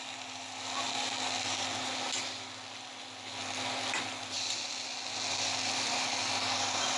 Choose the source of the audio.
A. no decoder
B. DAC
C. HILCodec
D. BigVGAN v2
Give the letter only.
A